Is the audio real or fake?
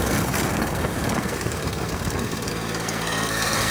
fake